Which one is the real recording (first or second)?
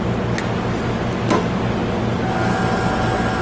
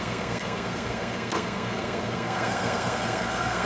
first